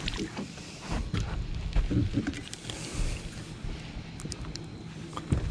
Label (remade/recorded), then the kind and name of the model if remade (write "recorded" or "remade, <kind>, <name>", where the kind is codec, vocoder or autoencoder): recorded